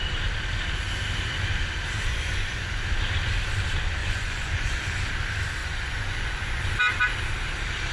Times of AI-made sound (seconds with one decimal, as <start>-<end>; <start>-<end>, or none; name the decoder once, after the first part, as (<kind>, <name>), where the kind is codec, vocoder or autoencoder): 2.1-2.8 (vocoder, Vocos); 4.0-5.0; 5.6-6.7